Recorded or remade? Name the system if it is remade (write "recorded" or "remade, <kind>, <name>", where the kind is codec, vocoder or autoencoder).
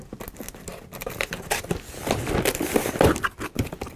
recorded